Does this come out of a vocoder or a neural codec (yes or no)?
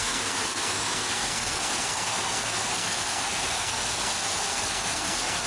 yes